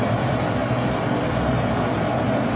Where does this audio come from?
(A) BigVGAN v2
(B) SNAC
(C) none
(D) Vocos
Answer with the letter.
A